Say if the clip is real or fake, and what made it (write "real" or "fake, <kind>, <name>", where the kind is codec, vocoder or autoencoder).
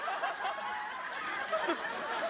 real